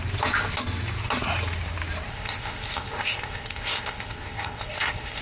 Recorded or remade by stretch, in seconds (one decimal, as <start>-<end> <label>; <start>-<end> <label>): 0.0-2.1 recorded; 2.1-5.2 remade